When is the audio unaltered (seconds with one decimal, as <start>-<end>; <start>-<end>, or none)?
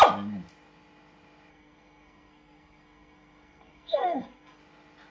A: 0.0-1.5; 4.6-5.1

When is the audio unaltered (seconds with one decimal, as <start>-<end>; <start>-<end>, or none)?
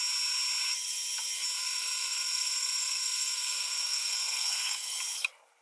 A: 0.0-1.6; 5.0-5.6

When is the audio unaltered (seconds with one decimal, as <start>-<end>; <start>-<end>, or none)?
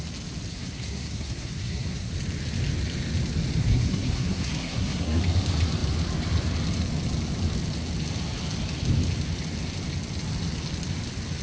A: 0.0-0.5; 2.1-3.6; 5.2-11.4